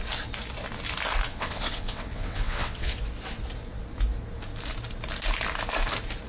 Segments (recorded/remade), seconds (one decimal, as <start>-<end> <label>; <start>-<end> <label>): 0.0-1.3 recorded; 1.3-3.0 remade; 3.0-6.3 recorded